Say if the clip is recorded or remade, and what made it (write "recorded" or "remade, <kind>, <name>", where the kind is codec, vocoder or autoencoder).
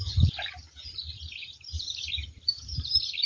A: remade, vocoder, BigVGAN v2